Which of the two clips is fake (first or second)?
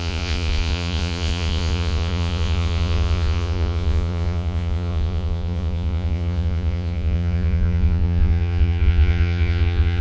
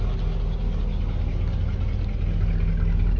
first